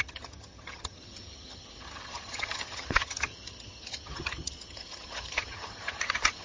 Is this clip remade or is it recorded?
remade